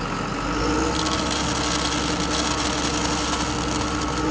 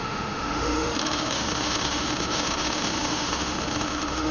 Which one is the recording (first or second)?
first